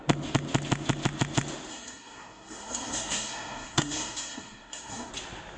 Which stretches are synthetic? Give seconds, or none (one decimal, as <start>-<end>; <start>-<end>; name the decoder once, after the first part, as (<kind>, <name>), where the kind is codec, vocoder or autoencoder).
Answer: 1.7-5.1 (codec, SNAC)

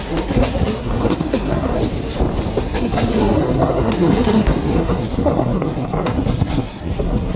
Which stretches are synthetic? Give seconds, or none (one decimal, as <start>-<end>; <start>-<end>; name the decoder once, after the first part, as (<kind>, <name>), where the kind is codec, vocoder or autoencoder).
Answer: 0.0-1.8 (codec, SNAC); 2.5-7.4